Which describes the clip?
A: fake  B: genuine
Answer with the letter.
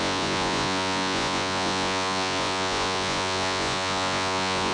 A